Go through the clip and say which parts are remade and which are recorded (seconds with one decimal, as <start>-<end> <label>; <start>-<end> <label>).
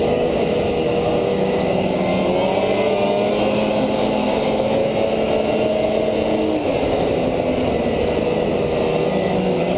0.0-2.1 remade; 2.1-3.5 recorded; 3.5-4.8 remade; 4.8-9.2 recorded; 9.2-9.8 remade